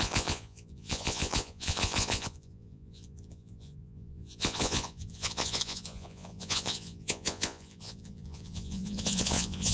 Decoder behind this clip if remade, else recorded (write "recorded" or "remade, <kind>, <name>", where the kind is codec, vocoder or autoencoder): remade, vocoder, Vocos